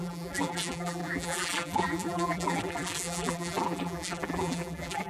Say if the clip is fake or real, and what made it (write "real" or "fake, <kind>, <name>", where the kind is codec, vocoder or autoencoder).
fake, vocoder, BigVGAN v2